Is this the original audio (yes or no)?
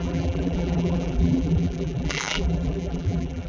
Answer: no